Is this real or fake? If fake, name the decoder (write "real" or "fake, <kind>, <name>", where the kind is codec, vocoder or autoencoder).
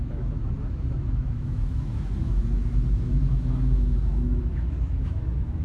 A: fake, autoencoder, DAC-VAE